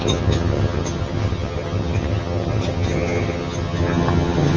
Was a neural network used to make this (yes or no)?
yes